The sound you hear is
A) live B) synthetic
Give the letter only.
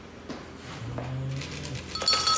A